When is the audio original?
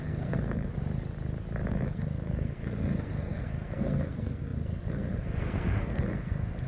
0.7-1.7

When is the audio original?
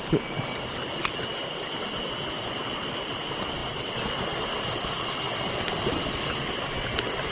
0.0-7.3